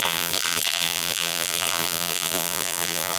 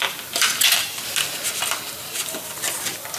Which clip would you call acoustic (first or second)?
second